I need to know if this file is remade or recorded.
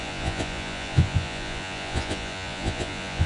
remade